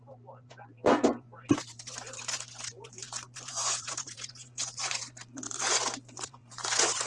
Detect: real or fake fake